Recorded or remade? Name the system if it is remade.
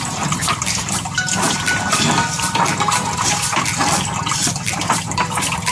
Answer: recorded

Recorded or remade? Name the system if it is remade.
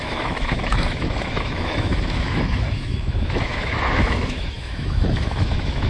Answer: remade, autoencoder, DAC-VAE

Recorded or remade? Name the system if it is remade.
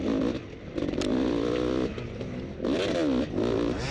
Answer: recorded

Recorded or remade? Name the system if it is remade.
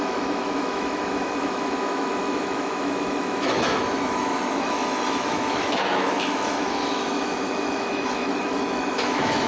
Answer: remade, autoencoder, DAC-VAE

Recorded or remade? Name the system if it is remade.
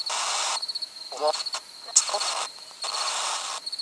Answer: recorded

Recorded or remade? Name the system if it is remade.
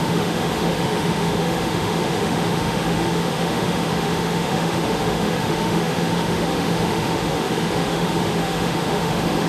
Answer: remade, autoencoder, DAC-VAE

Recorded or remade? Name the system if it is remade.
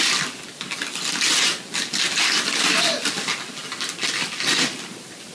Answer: recorded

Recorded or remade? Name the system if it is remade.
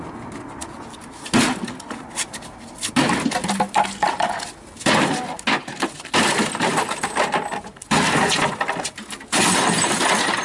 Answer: recorded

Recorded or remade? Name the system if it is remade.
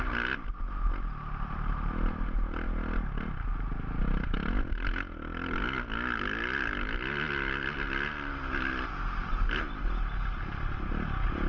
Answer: recorded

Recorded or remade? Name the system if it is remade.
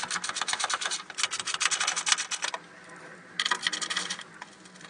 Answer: recorded